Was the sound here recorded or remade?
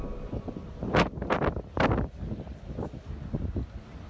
recorded